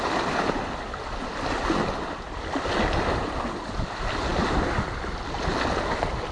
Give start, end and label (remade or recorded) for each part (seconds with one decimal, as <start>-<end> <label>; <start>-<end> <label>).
0.0-6.3 recorded